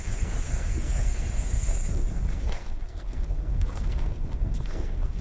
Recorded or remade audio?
remade